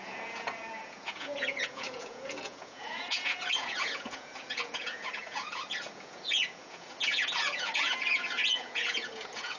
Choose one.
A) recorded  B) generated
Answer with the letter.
B